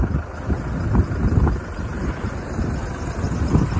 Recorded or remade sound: recorded